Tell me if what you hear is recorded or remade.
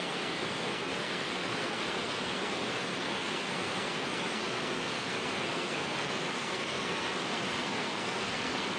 remade